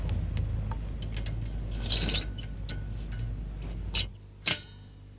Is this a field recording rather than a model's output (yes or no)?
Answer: yes